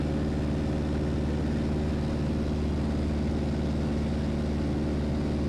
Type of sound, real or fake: real